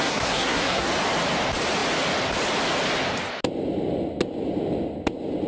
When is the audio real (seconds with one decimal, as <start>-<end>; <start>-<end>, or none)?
0.9-5.5